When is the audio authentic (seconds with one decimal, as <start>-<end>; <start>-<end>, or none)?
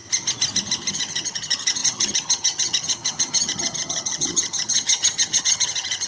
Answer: 0.0-0.9